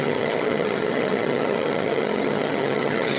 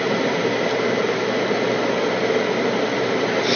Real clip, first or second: second